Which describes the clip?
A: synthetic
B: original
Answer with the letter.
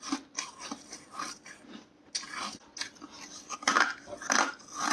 B